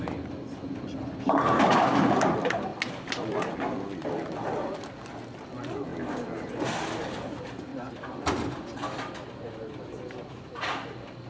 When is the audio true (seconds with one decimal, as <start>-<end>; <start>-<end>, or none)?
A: 0.0-7.7